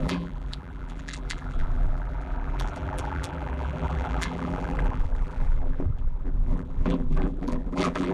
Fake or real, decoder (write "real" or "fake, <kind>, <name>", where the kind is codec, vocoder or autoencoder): fake, vocoder, BigVGAN v2